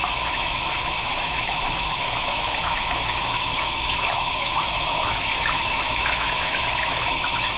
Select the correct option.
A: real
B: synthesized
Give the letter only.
B